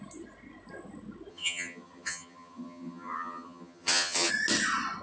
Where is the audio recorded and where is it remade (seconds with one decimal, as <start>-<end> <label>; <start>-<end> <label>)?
0.0-1.3 recorded; 1.3-4.3 remade; 4.3-5.0 recorded